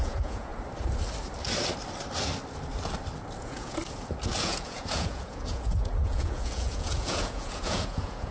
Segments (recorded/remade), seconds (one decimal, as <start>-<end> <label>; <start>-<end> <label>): 0.0-0.5 remade; 0.5-3.4 recorded; 3.4-3.8 remade; 3.8-4.4 recorded; 4.4-8.3 remade